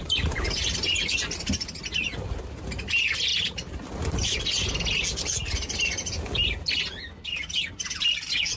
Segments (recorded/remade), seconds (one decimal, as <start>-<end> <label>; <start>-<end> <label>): 0.0-8.6 recorded